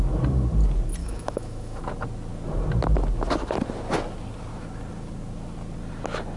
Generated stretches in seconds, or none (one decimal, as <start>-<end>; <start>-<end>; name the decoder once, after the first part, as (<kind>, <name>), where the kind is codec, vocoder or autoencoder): 1.0-1.8 (autoencoder, DAC-VAE)